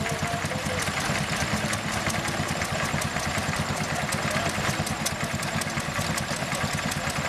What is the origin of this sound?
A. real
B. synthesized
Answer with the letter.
A